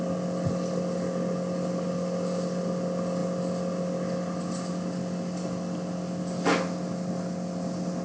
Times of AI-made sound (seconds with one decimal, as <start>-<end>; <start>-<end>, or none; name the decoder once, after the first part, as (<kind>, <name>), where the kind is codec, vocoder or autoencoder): none